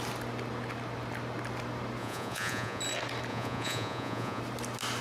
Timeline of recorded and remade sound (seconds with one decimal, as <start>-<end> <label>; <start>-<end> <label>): 0.0-2.0 recorded; 2.0-2.8 remade; 2.8-3.3 recorded; 3.3-4.4 remade; 4.4-5.0 recorded

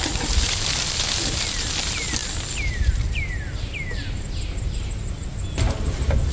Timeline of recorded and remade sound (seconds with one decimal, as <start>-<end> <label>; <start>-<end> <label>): 0.0-6.3 recorded

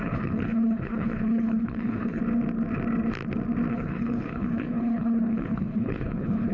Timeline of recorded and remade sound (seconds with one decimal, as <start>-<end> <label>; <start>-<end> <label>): 0.0-2.2 remade; 2.2-3.7 recorded; 3.7-6.5 remade

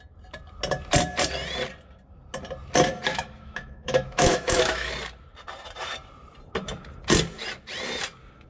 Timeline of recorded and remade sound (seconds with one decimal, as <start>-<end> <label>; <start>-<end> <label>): 0.0-3.1 recorded; 3.1-4.9 remade; 4.9-8.5 recorded

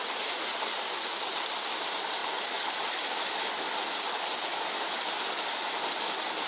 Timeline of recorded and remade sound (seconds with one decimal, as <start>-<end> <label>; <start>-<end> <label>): 0.0-2.2 recorded; 2.2-3.6 remade; 3.6-6.5 recorded